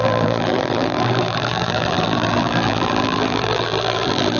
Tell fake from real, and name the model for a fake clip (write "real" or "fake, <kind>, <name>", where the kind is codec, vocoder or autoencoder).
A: fake, vocoder, BigVGAN v2